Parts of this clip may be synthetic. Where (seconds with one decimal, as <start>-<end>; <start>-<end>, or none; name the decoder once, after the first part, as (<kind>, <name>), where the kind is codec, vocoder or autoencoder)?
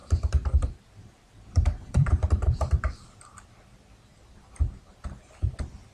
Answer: 0.0-3.5 (vocoder, BigVGAN v2); 4.1-5.5